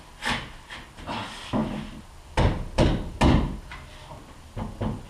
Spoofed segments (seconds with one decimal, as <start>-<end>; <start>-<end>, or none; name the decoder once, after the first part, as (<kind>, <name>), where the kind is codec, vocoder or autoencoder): none

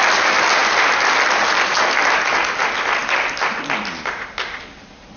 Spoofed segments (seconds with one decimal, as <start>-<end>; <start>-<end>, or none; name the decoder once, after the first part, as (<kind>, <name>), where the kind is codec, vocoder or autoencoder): none

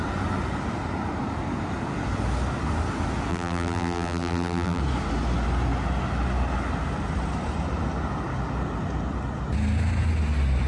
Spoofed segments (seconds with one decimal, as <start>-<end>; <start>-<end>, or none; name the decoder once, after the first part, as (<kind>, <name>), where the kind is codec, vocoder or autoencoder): 3.3-4.8 (vocoder, BigVGAN v2)